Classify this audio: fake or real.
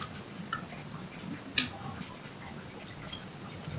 real